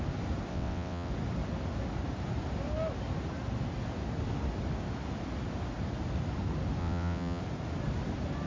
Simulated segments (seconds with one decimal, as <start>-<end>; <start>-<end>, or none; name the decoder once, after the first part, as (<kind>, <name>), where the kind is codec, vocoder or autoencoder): 0.5-1.1 (vocoder, WaveNeXt); 6.8-7.4